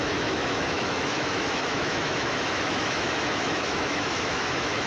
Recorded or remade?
remade